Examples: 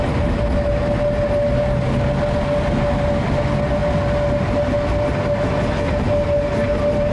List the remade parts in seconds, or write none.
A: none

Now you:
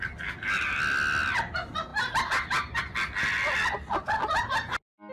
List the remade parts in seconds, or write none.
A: none

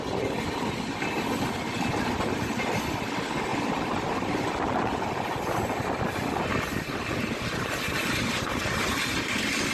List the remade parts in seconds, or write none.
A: 3.5-6.0 (vocoder, BigVGAN v2)

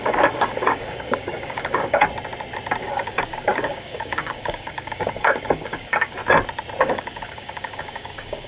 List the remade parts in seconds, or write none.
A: 0.0-2.0 (codec, DAC); 2.8-6.2; 6.8-8.5

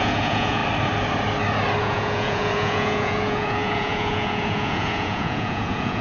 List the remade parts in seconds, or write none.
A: 0.0-0.6 (vocoder, Vocos); 1.8-6.0

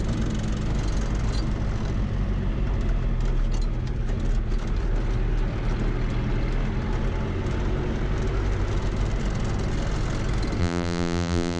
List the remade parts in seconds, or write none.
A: 10.6-11.6 (vocoder, BigVGAN v2)

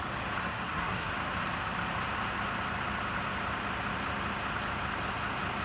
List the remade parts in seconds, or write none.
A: 0.4-1.1 (codec, SNAC)

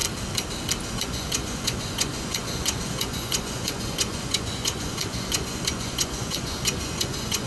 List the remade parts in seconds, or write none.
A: 0.9-7.5 (vocoder, Vocos)